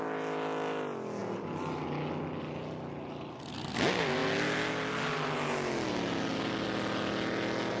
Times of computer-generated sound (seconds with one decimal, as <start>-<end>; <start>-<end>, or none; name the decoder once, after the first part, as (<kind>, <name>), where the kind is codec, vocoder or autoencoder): none